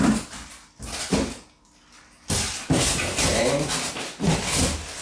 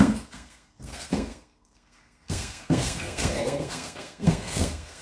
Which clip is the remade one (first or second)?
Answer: second